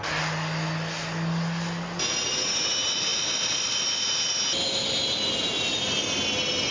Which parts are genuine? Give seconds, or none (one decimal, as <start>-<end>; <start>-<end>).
0.0-6.7